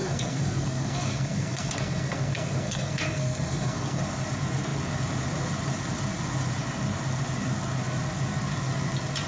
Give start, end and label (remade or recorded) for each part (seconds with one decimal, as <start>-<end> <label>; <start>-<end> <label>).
0.0-4.0 remade; 4.0-9.3 recorded

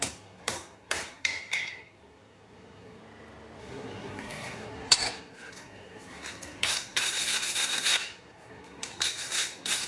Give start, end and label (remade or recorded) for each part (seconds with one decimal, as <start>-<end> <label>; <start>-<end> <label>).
0.0-3.0 remade; 3.0-3.6 recorded; 3.6-9.9 remade

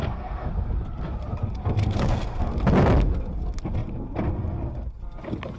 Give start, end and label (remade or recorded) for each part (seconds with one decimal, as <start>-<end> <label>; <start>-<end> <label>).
0.0-0.5 remade; 0.5-1.8 recorded; 1.8-2.4 remade; 2.4-5.6 recorded